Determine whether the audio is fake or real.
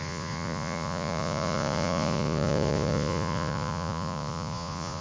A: fake